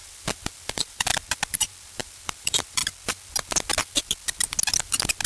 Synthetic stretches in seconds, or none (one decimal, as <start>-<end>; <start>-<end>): 0.0-1.1; 1.8-2.8